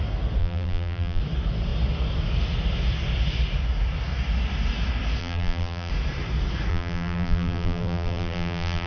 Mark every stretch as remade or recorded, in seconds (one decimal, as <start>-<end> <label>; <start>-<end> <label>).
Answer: 0.0-0.4 recorded; 0.4-1.2 remade; 1.2-5.2 recorded; 5.2-5.9 remade; 5.9-6.7 recorded; 6.7-8.9 remade